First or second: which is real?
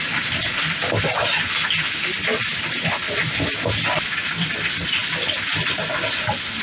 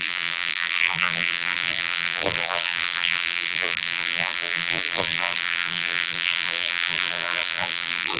first